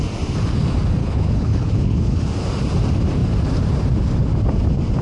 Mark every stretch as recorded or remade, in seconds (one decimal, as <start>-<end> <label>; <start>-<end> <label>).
0.0-1.0 recorded; 1.0-2.2 remade; 2.2-5.0 recorded